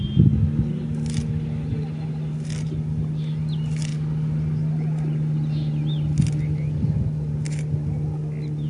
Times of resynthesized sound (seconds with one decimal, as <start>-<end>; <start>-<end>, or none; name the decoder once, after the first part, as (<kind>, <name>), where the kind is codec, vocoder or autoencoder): none